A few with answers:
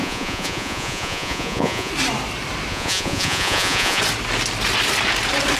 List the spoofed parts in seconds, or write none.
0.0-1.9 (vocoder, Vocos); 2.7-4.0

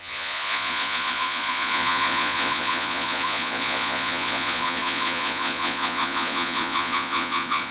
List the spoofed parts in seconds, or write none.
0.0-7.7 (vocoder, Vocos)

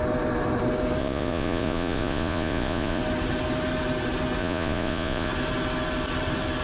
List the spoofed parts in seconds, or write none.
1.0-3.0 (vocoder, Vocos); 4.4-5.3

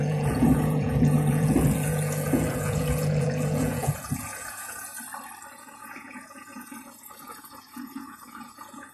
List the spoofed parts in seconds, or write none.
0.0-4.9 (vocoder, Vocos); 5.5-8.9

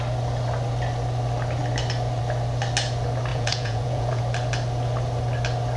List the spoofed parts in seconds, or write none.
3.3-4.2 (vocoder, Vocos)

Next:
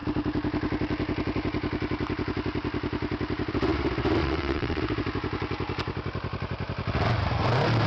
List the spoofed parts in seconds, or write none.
4.2-4.8 (vocoder, Vocos)

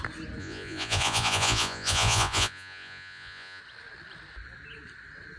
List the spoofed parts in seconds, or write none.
0.4-3.6 (vocoder, Vocos)

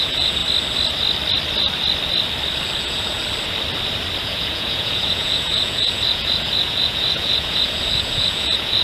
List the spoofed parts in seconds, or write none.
0.0-0.4 (vocoder, Vocos); 2.8-3.2; 4.2-8.8